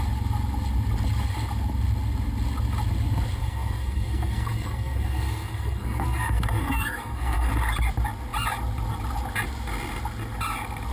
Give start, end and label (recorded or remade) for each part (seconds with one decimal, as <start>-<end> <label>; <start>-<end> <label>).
0.0-3.4 recorded; 3.4-7.5 remade; 7.5-10.9 recorded